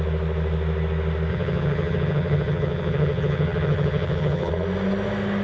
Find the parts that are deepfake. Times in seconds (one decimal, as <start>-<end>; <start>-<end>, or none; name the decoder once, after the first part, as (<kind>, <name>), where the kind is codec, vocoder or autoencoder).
1.3-4.5 (vocoder, HiFi-GAN)